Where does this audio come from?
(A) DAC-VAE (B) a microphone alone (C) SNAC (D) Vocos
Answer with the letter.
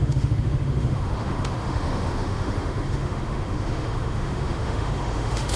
A